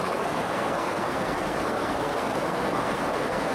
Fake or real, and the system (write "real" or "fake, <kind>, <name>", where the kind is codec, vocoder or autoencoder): fake, codec, SNAC